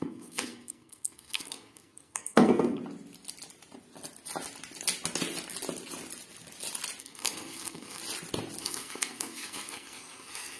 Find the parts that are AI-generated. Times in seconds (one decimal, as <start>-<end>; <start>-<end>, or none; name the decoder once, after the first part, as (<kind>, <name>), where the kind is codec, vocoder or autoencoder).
0.0-2.8 (codec, SNAC); 7.0-8.0; 8.6-10.6